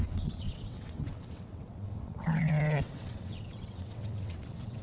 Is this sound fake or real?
fake